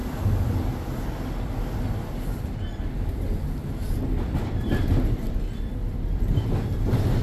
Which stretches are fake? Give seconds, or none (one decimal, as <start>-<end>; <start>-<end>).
none